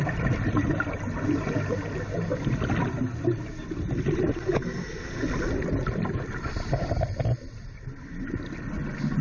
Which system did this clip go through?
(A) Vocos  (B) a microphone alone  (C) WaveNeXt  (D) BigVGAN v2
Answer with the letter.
B